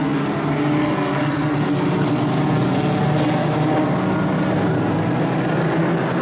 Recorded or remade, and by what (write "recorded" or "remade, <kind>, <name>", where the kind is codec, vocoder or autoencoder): recorded